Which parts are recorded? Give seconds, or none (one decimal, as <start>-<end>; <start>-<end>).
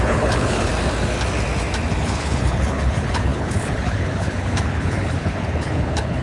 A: 0.7-2.0